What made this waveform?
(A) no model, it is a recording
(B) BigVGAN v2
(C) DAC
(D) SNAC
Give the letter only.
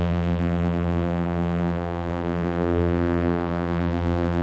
B